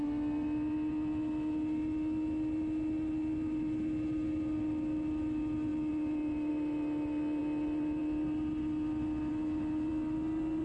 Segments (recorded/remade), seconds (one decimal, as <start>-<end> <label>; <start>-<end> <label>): 0.0-10.6 recorded